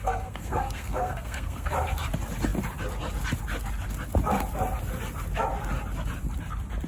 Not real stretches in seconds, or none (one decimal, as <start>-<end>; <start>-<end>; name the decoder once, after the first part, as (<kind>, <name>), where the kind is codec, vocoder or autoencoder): 0.0-1.7 (codec, SNAC)